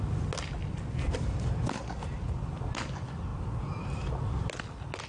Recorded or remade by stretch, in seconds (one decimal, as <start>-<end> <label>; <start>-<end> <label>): 0.0-0.6 recorded; 0.6-2.2 remade; 2.2-3.3 recorded; 3.3-4.1 remade; 4.1-5.1 recorded